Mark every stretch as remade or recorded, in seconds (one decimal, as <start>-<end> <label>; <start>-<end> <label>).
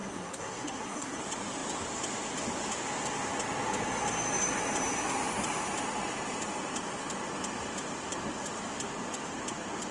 0.0-1.2 remade; 1.2-9.9 recorded